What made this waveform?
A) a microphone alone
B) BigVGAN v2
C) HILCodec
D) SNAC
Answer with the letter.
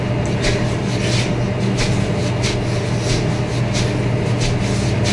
A